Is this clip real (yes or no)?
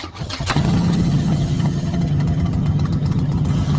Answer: no